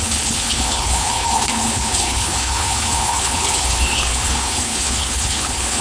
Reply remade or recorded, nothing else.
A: remade